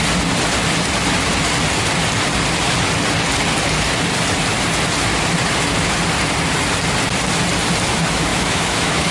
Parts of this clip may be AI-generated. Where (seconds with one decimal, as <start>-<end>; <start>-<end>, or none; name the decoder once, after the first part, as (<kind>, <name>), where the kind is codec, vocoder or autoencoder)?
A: 8.3-9.1 (autoencoder, DAC-VAE)

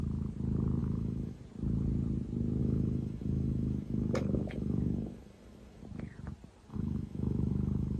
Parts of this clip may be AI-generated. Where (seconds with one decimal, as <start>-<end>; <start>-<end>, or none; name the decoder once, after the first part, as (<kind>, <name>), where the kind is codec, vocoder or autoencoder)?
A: 0.8-1.4 (autoencoder, DAC-VAE); 2.6-5.8; 6.7-8.0